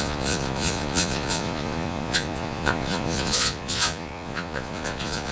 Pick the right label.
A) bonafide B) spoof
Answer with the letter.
B